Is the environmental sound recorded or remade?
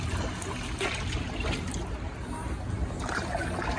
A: recorded